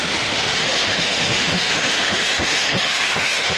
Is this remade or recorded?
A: remade